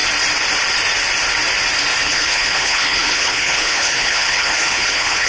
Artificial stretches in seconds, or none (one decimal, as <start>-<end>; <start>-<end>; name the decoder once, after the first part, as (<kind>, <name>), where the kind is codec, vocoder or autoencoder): 2.0-5.3 (codec, HILCodec)